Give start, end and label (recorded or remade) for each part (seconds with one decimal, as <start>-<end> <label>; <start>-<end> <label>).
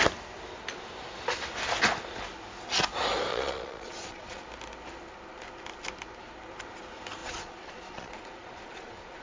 0.0-3.3 recorded; 3.3-4.4 remade; 4.4-7.2 recorded; 7.2-9.2 remade